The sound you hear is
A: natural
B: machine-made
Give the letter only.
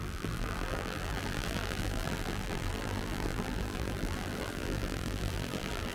B